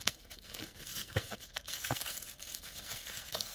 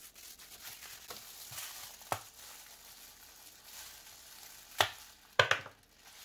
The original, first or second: second